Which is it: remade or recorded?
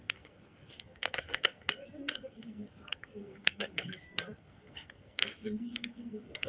remade